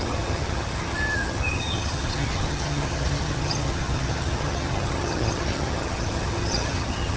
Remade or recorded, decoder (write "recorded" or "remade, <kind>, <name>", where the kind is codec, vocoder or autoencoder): remade, vocoder, HiFi-GAN